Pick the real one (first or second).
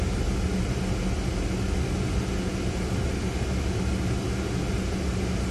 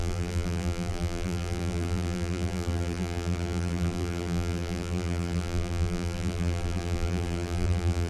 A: first